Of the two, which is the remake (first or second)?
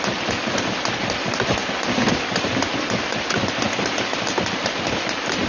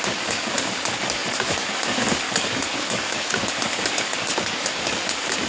second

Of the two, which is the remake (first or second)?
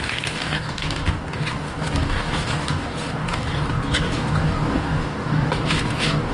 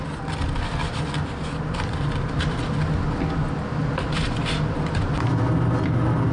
first